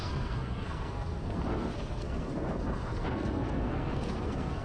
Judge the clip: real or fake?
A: fake